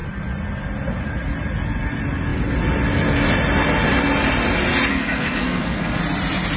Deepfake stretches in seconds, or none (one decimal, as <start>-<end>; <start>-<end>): 4.9-6.0